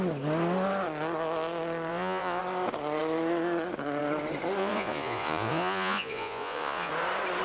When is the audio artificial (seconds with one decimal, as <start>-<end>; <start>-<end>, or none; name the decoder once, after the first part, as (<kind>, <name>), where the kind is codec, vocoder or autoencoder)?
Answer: 1.9-2.4 (vocoder, Vocos); 4.6-6.9